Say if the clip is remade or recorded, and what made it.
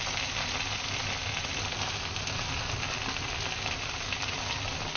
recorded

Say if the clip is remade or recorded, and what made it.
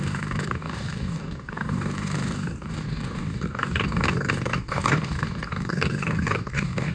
remade, codec, DAC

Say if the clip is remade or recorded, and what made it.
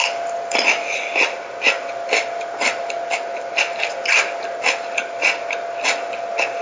recorded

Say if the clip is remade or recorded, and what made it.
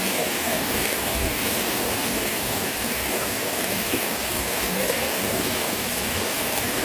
remade, codec, DAC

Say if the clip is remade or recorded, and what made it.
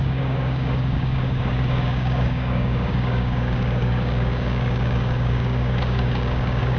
remade, codec, DAC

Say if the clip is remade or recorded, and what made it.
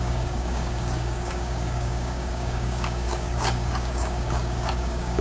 remade, codec, DAC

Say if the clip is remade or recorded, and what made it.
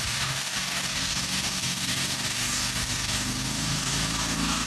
remade, codec, DAC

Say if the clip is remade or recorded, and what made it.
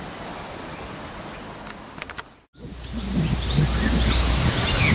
recorded